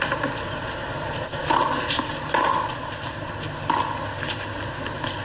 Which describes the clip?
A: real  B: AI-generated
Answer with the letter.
A